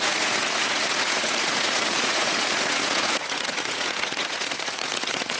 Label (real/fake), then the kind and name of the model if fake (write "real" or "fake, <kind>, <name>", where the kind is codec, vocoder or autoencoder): fake, vocoder, Vocos